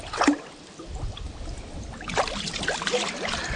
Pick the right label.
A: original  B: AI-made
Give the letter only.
A